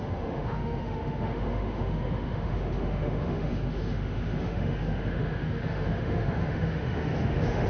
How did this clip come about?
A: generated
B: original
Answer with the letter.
A